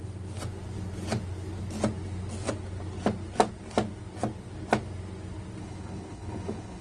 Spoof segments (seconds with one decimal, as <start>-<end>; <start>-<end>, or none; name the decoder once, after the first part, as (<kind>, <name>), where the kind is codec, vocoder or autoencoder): 5.6-6.8 (codec, HILCodec)